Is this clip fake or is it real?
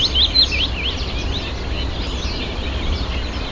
real